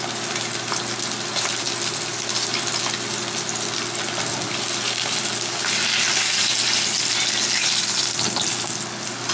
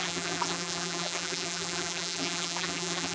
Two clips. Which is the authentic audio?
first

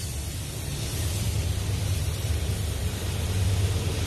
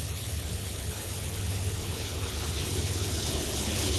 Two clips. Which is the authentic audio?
first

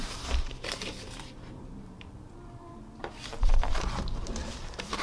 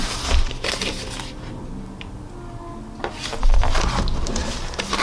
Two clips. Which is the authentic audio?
second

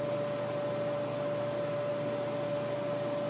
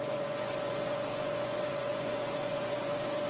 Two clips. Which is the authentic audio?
first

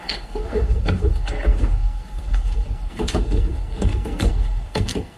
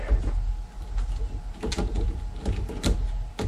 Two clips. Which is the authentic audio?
second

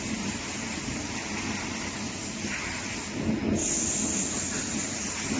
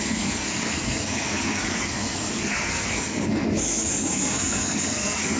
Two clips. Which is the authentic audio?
first